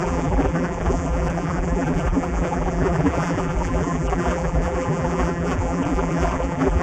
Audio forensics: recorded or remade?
remade